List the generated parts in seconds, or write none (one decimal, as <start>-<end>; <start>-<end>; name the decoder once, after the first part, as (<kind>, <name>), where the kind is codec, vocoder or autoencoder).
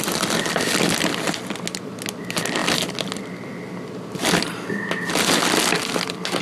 none